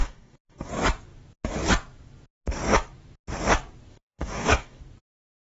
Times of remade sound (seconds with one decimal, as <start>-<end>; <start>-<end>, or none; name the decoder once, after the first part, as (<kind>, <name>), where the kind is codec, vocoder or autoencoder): 0.0-0.7 (codec, DAC); 3.9-4.8